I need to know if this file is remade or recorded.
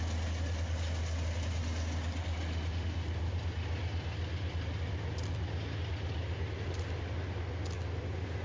recorded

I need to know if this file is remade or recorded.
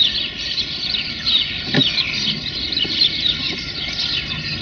recorded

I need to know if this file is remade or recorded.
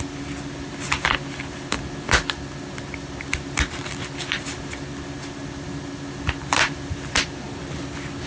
recorded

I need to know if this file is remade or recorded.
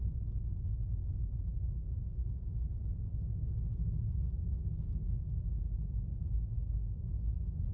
recorded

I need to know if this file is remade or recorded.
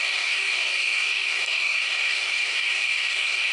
remade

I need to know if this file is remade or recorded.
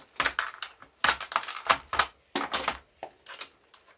recorded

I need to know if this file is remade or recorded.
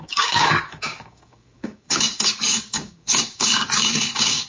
remade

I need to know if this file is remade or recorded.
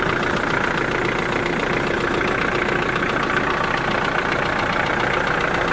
recorded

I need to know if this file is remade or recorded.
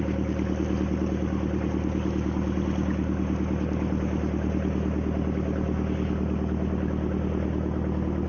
recorded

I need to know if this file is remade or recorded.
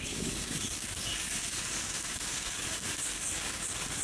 remade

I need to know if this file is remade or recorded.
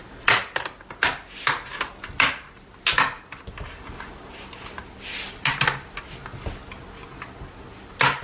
recorded